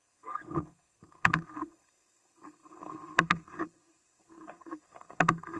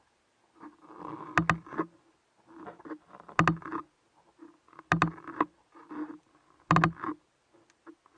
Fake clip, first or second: first